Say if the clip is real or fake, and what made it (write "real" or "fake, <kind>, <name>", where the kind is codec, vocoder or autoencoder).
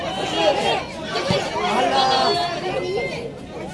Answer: real